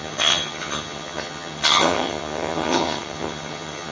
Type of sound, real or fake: fake